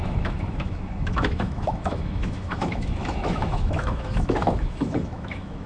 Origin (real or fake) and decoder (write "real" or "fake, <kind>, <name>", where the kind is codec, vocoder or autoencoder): fake, autoencoder, DAC-VAE